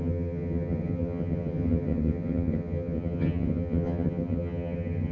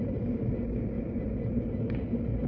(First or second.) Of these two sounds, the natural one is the second